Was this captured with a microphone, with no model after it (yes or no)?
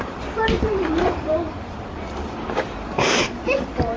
no